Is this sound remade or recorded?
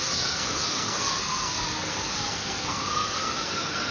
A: remade